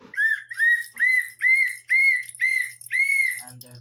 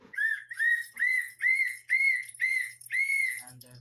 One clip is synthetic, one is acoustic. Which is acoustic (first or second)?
first